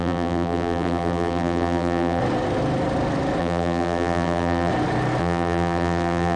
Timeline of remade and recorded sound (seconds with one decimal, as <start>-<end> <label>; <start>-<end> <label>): 0.0-2.2 remade; 2.2-3.4 recorded; 3.4-4.7 remade; 4.7-5.2 recorded; 5.2-6.4 remade